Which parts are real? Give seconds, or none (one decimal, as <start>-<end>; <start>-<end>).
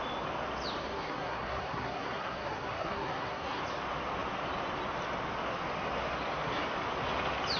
0.0-0.8; 3.6-7.6